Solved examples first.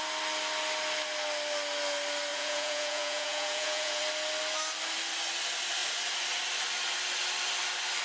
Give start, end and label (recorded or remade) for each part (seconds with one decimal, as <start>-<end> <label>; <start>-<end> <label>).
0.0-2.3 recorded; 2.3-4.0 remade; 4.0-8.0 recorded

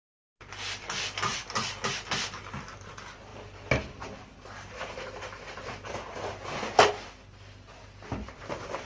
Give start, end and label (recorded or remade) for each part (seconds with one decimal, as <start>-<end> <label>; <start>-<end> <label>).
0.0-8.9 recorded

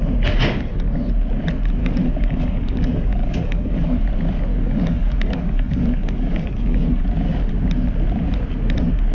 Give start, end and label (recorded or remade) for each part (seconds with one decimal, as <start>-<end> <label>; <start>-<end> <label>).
0.0-0.4 recorded; 0.4-1.1 remade; 1.1-1.8 recorded; 1.8-4.0 remade; 4.0-4.5 recorded; 4.5-7.0 remade; 7.0-9.1 recorded